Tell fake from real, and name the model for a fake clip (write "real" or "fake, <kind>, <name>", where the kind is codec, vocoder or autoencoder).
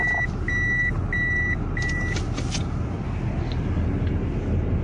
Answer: real